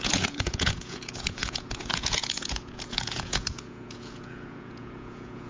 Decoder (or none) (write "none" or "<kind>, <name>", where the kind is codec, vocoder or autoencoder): vocoder, Vocos